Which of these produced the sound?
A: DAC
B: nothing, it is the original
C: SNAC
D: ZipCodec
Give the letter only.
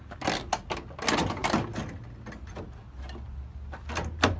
B